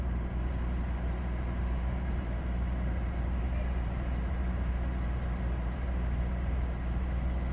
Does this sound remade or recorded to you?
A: remade